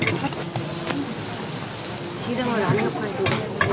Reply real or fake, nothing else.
real